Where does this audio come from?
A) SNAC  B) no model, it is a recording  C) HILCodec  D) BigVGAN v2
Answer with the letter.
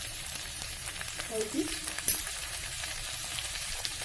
D